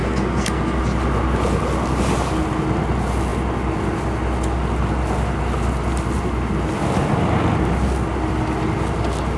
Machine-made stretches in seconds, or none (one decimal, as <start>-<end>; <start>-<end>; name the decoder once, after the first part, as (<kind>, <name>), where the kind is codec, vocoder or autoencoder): 0.0-0.8 (codec, SNAC)